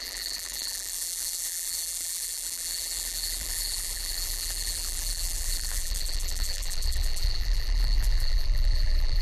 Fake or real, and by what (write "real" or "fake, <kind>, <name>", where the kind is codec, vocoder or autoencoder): fake, vocoder, BigVGAN v2